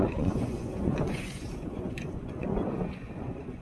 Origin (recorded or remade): remade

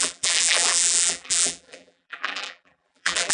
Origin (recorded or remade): remade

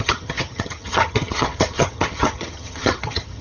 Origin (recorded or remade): remade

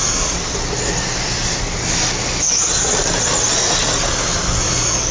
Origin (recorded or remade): recorded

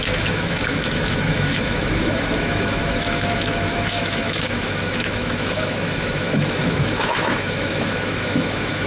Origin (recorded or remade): remade